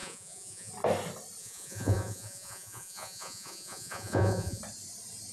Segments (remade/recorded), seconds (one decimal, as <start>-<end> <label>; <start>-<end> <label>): 0.0-0.7 remade; 0.7-1.4 recorded; 1.4-4.6 remade; 4.6-5.3 recorded